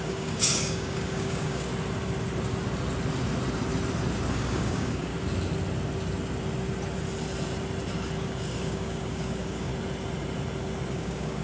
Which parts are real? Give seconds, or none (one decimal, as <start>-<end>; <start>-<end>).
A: 1.7-4.3; 5.1-8.2; 9.7-10.9